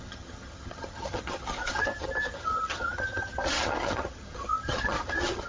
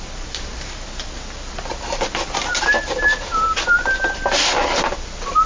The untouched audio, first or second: second